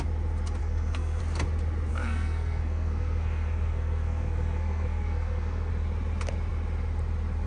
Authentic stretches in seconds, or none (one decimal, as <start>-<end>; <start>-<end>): 0.0-0.6; 1.2-1.9; 5.7-7.5